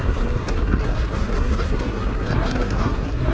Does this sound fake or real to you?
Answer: fake